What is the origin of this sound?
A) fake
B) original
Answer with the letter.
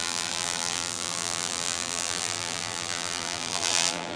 A